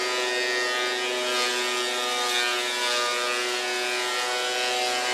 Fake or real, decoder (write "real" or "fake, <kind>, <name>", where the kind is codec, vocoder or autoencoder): real